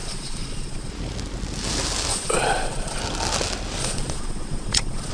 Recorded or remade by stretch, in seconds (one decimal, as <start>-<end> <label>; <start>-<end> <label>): 0.0-0.9 remade; 0.9-2.1 recorded; 2.1-3.0 remade; 3.0-3.8 recorded; 3.8-5.1 remade